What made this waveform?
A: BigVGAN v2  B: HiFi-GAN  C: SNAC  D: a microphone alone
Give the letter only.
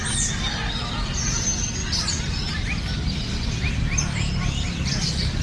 D